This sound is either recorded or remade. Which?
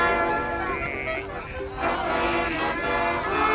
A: recorded